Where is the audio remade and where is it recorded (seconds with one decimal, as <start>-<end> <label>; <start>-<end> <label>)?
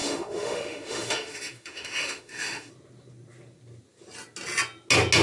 0.0-2.7 remade; 2.7-5.2 recorded